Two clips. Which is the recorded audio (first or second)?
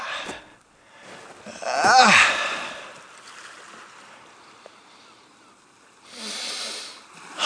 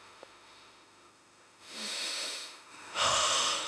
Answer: first